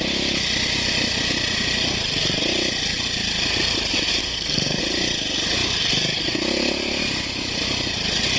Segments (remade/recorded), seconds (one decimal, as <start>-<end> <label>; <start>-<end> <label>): 0.0-4.2 recorded; 4.2-4.8 remade; 4.8-8.4 recorded